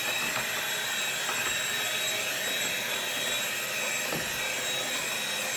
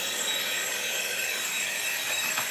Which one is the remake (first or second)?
second